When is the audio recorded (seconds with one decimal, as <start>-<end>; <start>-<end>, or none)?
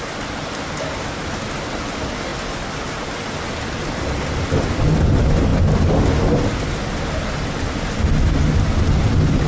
0.0-9.5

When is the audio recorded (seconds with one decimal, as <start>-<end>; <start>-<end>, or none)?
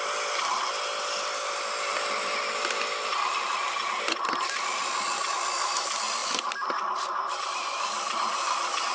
3.1-4.0; 4.8-5.3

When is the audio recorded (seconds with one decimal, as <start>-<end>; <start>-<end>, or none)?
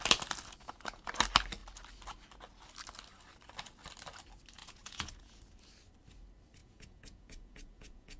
0.0-0.6; 1.1-4.6; 5.4-6.6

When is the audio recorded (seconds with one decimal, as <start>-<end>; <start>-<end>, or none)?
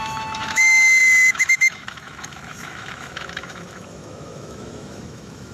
none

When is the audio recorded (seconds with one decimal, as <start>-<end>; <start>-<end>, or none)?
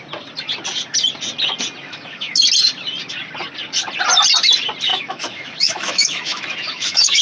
0.0-1.8; 2.4-4.9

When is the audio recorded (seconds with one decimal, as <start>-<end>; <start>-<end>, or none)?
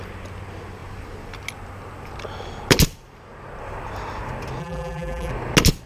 0.0-4.6; 5.3-5.9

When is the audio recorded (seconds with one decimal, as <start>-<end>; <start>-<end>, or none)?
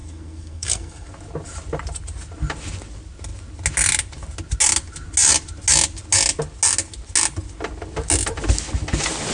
1.1-9.3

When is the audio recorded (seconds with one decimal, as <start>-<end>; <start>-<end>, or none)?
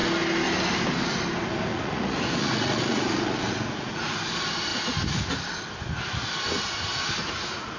0.0-1.7; 4.2-7.2